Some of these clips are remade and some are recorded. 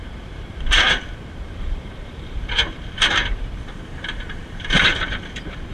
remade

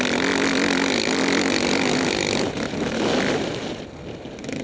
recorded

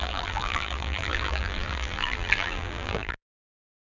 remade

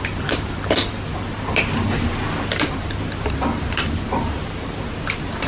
remade